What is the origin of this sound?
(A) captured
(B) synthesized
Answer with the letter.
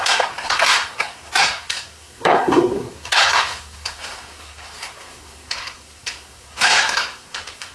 B